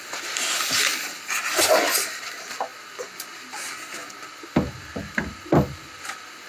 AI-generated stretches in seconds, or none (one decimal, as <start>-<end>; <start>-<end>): none